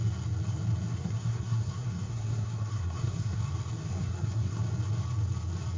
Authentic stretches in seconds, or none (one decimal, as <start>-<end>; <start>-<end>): 0.0-0.9; 3.4-3.9; 4.6-5.8